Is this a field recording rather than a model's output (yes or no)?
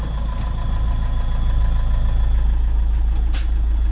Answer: yes